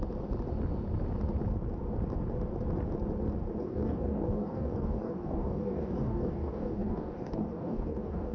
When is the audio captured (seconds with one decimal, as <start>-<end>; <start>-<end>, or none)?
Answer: 0.0-3.6